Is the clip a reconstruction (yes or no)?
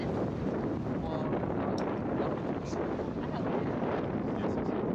no